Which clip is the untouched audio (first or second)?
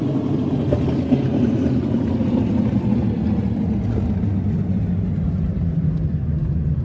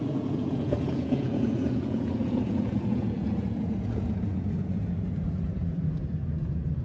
first